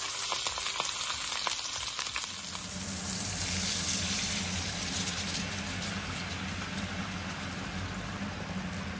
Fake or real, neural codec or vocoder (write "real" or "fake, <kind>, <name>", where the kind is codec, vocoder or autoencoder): real